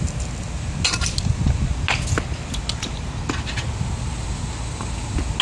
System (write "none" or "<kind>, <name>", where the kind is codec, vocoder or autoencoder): none